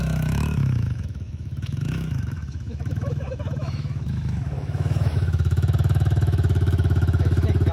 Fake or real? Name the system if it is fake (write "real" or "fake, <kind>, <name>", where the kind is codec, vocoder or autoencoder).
fake, autoencoder, DAC-VAE